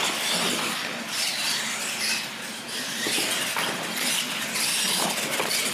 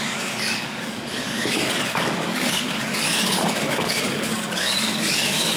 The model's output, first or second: second